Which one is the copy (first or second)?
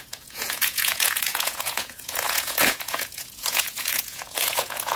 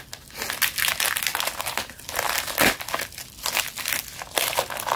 first